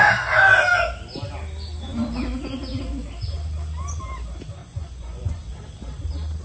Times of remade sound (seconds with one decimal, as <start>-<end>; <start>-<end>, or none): 4.6-5.4